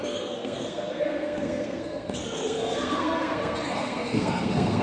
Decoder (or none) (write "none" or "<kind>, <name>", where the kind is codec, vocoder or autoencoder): codec, SNAC